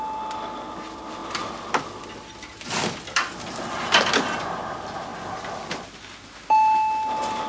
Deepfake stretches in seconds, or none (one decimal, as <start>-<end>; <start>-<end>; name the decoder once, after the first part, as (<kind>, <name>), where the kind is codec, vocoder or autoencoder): 1.2-4.0 (vocoder, BigVGAN v2)